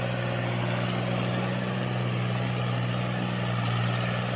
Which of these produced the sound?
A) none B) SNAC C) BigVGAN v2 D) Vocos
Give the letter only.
A